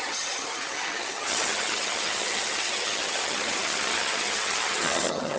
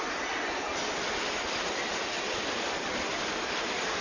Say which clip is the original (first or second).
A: second